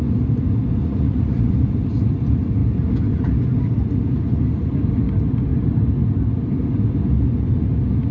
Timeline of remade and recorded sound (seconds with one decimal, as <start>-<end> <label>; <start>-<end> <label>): 0.0-0.8 recorded; 0.8-1.5 remade; 1.5-8.1 recorded